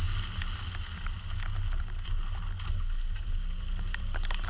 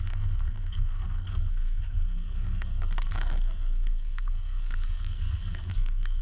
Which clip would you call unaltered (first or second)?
first